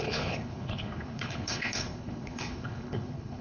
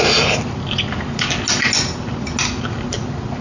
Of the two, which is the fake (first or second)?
first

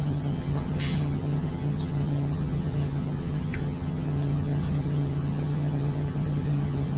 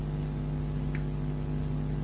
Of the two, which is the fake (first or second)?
first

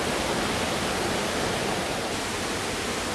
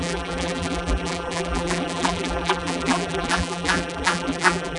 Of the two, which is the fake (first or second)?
second